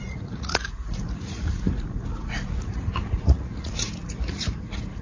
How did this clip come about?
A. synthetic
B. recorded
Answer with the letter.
A